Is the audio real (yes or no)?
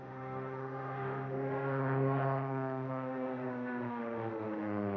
no